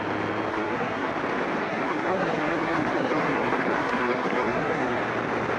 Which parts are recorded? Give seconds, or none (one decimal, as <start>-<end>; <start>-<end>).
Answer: 0.0-0.5; 1.1-1.6; 5.0-5.6